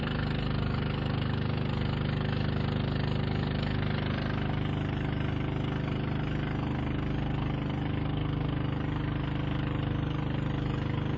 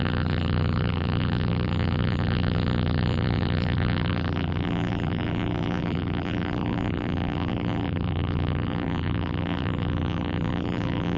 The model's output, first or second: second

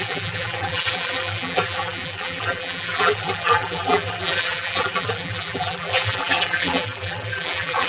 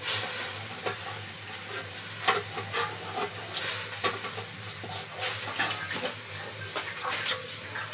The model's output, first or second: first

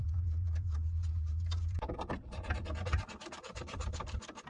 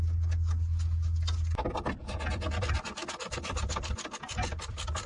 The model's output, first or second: first